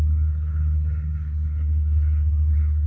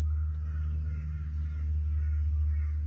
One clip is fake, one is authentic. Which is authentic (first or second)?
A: second